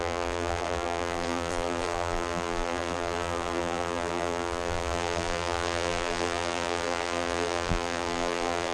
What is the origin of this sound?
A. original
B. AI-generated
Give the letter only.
B